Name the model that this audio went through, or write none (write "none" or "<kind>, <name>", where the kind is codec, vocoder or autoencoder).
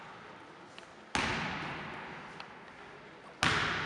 none